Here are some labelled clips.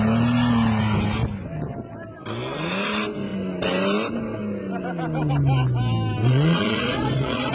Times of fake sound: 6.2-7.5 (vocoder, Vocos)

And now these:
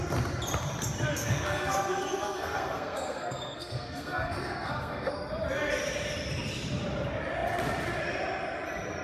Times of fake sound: 1.1-5.1 (codec, SNAC)